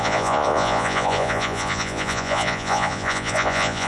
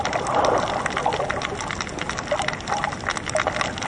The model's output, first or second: first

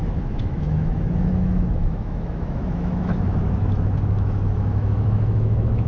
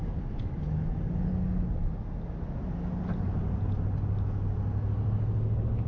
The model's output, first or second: first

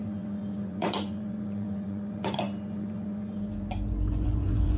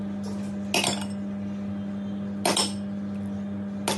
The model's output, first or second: first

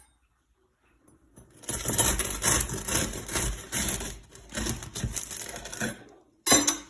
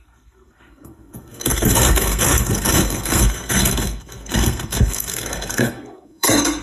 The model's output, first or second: second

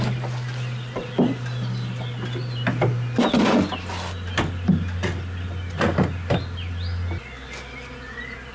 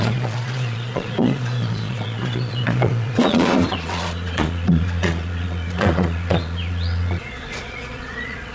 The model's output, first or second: second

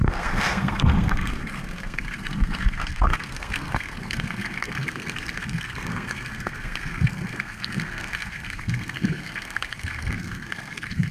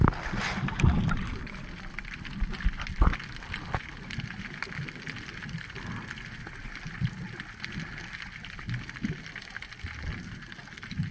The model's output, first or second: first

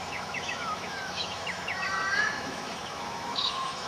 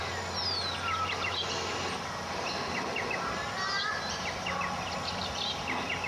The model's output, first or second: first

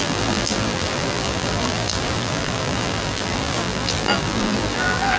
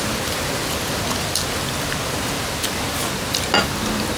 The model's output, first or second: first